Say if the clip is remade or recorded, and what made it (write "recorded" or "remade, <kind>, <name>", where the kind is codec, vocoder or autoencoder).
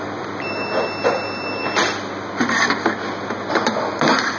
recorded